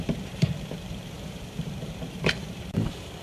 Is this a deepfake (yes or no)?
yes